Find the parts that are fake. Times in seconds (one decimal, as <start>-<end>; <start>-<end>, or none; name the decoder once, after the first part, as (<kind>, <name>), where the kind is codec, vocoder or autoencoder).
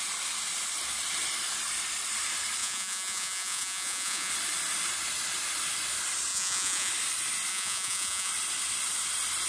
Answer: 2.6-4.3 (vocoder, Vocos); 6.3-6.9; 7.5-8.3